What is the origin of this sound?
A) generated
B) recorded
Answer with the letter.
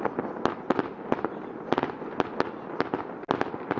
B